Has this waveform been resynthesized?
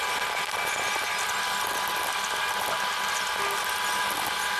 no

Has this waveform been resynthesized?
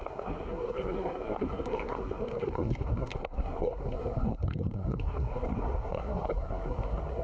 yes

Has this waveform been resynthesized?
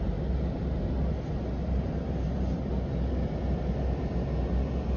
no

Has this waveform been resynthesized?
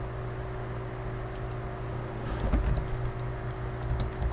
no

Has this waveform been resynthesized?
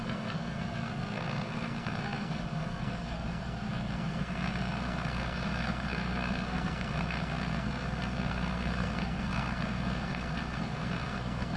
yes